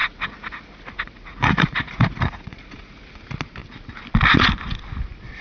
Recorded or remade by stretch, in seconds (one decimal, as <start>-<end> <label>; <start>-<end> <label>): 0.0-3.2 remade; 3.2-5.4 recorded